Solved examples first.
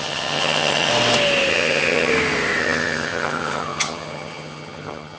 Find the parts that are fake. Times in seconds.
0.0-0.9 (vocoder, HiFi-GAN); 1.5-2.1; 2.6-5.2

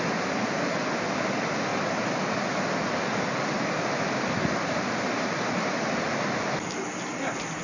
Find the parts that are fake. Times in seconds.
none

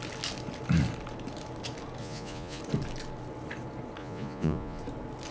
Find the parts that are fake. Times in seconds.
2.0-2.6 (vocoder, Vocos); 4.0-4.8

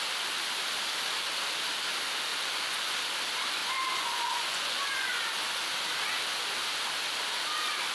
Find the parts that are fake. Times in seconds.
2.3-3.0 (vocoder, Vocos); 3.6-5.2

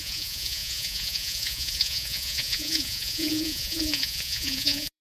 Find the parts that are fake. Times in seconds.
0.0-5.0 (vocoder, Vocos)

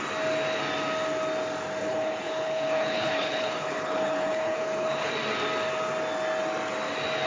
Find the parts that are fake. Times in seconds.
1.8-5.1 (codec, HILCodec)